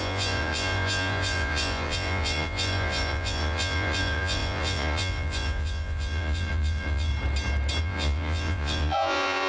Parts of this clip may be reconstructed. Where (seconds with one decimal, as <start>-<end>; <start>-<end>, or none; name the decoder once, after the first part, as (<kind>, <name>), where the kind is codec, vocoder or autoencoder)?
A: 0.0-7.1 (vocoder, Vocos); 7.8-9.5